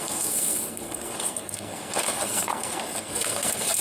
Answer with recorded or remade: remade